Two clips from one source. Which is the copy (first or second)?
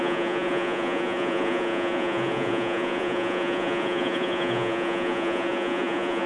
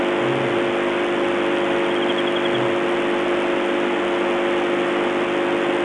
first